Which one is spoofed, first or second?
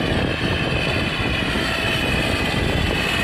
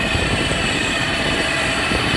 second